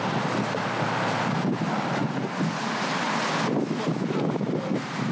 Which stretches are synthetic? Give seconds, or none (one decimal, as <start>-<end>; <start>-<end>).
0.0-2.0; 3.9-5.1